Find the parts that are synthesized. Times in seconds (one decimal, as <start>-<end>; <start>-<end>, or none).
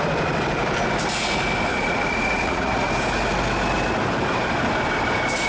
1.7-2.9